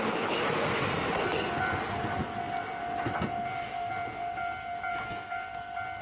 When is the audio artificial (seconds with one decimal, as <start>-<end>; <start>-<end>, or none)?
4.9-5.5